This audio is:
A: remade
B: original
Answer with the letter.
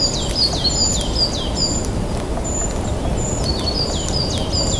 B